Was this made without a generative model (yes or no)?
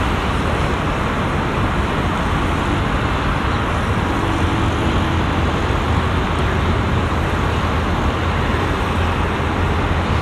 yes